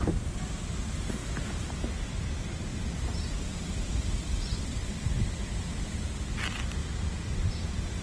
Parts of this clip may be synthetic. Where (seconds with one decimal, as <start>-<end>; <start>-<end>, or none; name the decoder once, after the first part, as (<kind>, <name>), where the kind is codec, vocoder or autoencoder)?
0.0-1.2 (vocoder, BigVGAN v2); 1.7-8.0